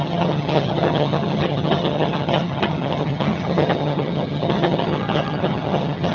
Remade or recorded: remade